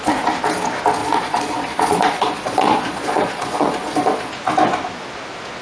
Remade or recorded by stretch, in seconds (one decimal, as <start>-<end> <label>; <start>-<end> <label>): 0.0-1.0 recorded; 1.0-4.3 remade; 4.3-5.6 recorded